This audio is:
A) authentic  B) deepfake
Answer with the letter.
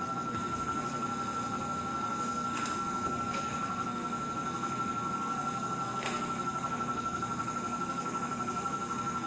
B